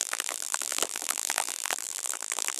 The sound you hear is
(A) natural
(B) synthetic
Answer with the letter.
B